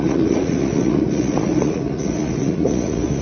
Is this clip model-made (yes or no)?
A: yes